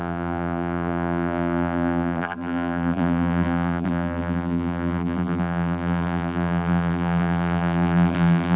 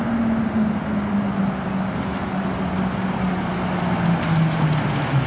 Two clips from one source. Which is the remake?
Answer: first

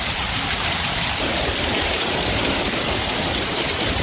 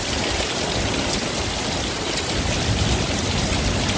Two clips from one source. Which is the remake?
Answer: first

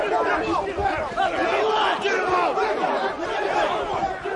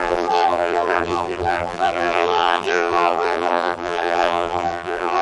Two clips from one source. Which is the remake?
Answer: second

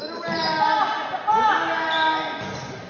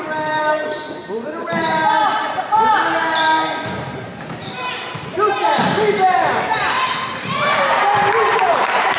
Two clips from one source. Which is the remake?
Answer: second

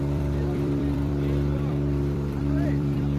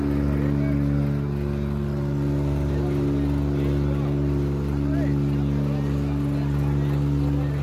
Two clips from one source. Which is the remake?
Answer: first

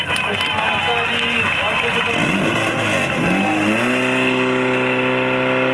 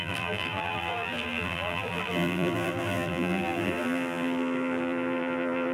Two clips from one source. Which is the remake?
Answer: second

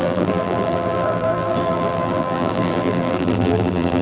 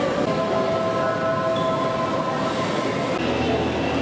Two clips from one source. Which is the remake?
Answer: first